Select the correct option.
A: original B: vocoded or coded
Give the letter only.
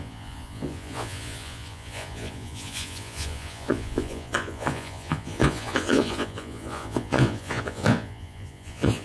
B